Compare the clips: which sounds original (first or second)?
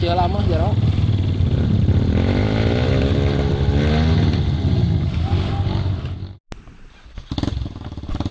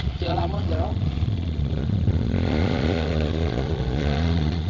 first